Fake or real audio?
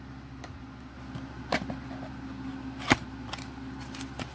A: real